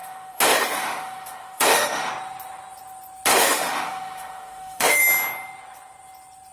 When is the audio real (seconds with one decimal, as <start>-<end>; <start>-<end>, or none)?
2.1-3.3; 5.0-6.5